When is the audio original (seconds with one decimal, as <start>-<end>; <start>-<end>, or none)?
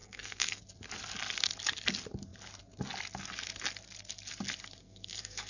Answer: 0.6-4.8